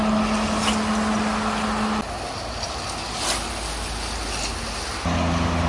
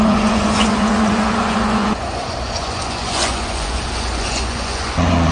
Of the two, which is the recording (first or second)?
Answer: first